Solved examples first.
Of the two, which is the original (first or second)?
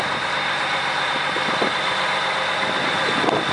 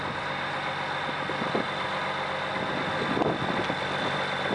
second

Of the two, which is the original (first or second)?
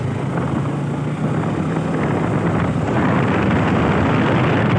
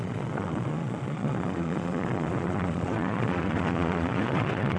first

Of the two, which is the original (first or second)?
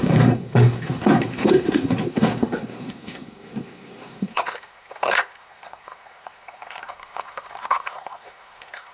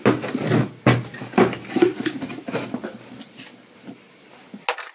second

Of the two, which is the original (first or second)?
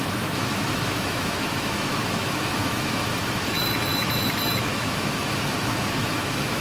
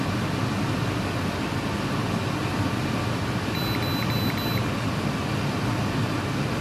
second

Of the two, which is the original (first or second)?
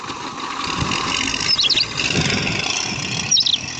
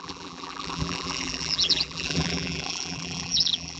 first